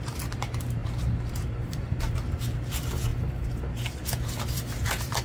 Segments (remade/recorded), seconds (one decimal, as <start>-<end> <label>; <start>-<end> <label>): 0.0-5.2 remade